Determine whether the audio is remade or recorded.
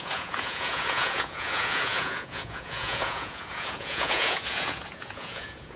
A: remade